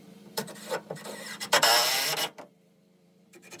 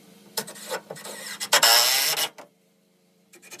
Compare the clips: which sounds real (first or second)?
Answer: second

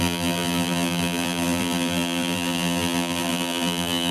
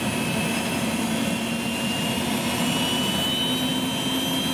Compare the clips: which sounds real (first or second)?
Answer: second